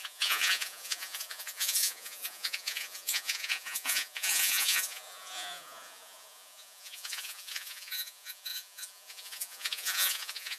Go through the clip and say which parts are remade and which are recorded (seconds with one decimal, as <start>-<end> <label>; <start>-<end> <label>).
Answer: 0.0-10.6 remade